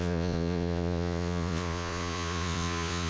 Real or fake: fake